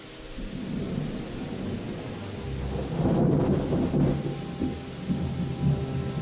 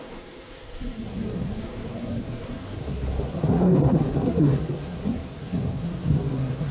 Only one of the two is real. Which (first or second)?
first